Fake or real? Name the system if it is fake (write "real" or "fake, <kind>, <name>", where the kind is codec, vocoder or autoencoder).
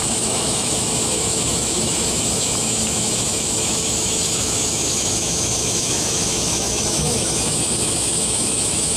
fake, autoencoder, DAC-VAE